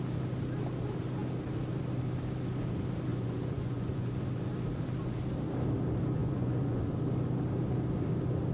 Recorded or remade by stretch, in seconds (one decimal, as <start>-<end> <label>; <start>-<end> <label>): 0.0-3.1 recorded; 3.1-4.1 remade; 4.1-6.2 recorded; 6.2-6.8 remade; 6.8-8.5 recorded

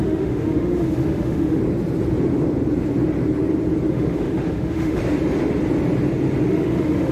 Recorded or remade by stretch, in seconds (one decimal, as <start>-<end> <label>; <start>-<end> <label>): 0.0-1.6 remade; 1.6-3.9 recorded; 3.9-5.0 remade; 5.0-6.5 recorded; 6.5-7.1 remade

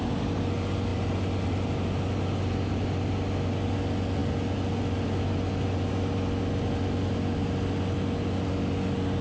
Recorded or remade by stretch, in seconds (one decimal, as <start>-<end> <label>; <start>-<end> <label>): 0.0-9.2 recorded

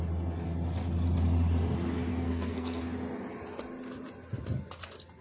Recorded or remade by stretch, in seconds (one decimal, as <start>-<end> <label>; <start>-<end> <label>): 0.0-2.1 recorded; 2.1-2.8 remade; 2.8-5.2 recorded

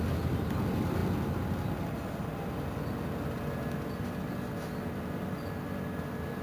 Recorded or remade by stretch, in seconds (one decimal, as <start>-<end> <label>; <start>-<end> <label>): 0.0-6.4 recorded